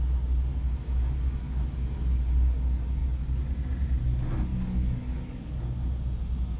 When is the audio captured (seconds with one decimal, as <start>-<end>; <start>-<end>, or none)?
0.0-4.5; 5.6-6.6